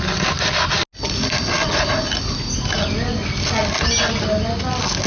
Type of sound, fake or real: real